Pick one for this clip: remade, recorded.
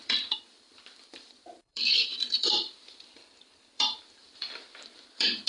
remade